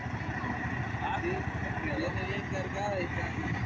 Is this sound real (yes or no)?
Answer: yes